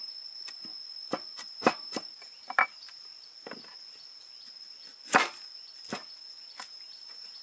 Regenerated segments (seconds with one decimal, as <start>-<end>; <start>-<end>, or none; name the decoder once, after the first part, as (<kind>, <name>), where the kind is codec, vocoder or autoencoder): 0.0-0.7 (vocoder, BigVGAN v2); 1.5-3.1; 6.1-7.4